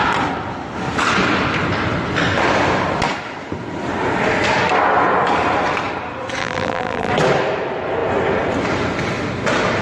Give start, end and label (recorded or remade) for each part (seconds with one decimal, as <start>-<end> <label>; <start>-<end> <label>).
0.0-6.4 recorded; 6.4-7.1 remade; 7.1-9.8 recorded